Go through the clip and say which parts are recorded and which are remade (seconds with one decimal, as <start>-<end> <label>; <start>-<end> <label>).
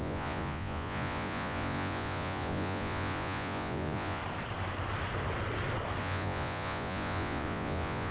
0.0-4.2 remade; 4.2-6.0 recorded; 6.0-8.1 remade